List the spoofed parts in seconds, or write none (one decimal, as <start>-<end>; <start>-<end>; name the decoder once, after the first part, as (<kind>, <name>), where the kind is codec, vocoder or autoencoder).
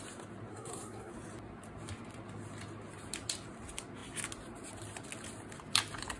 0.5-1.1 (codec, SNAC)